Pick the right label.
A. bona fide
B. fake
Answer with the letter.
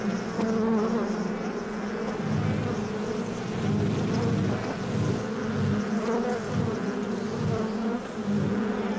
A